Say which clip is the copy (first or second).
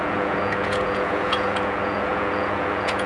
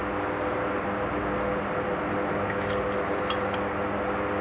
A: first